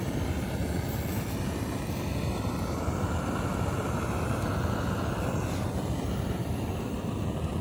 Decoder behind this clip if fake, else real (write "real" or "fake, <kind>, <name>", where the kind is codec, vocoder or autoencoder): real